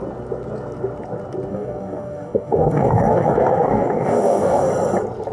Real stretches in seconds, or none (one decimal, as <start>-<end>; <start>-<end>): 0.0-1.5; 4.7-5.3